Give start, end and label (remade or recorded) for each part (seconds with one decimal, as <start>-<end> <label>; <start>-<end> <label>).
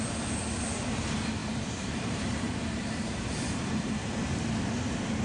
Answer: 0.0-1.4 recorded; 1.4-4.5 remade; 4.5-5.2 recorded